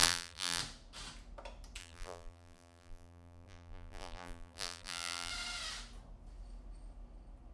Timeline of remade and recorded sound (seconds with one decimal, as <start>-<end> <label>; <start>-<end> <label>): 0.0-0.6 remade; 0.6-1.8 recorded; 1.8-5.3 remade; 5.3-7.5 recorded